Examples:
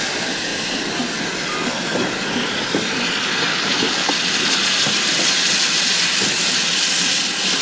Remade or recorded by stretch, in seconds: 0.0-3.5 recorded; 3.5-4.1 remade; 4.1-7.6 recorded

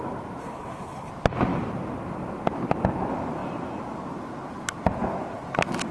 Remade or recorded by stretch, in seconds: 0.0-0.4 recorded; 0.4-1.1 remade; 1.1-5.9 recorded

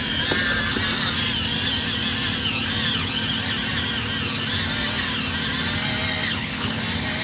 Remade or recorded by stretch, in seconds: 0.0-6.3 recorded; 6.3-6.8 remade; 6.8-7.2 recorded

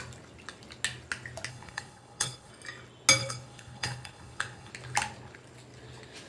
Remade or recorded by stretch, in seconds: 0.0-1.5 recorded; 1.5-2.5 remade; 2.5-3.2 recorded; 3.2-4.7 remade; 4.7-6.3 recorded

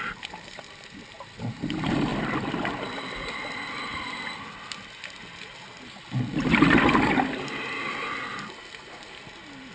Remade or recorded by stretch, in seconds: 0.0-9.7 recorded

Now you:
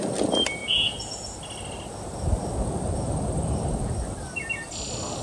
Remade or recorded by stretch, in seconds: 0.0-5.2 recorded

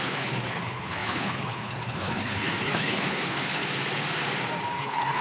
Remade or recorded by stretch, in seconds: 0.0-3.6 remade; 3.6-4.8 recorded; 4.8-5.2 remade

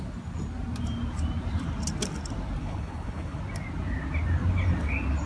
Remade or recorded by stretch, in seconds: 0.0-2.6 recorded; 2.6-3.4 remade; 3.4-5.3 recorded